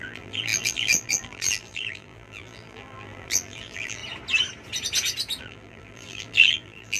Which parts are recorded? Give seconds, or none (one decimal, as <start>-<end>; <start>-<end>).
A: 4.0-5.4